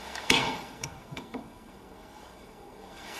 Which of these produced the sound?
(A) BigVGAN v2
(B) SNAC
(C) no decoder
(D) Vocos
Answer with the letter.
B